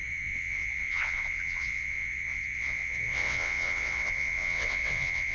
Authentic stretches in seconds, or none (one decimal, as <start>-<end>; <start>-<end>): none